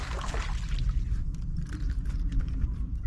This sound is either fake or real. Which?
real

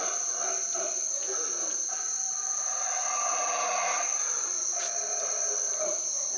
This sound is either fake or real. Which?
real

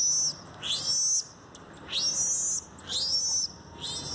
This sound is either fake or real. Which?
real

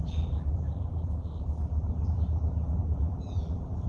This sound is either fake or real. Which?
fake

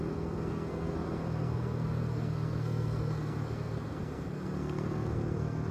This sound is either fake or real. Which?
fake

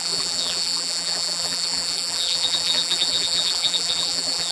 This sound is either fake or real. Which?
fake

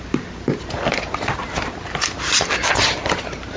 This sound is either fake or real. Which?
fake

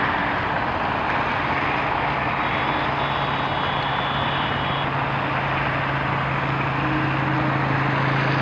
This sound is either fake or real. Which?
real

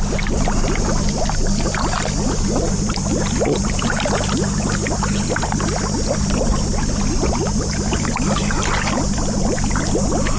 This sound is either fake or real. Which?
real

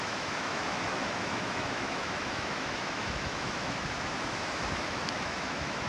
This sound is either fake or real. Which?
fake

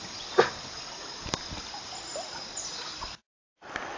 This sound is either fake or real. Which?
real